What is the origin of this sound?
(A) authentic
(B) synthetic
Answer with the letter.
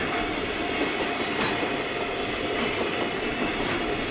A